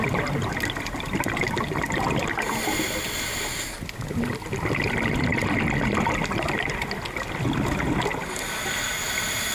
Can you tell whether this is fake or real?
real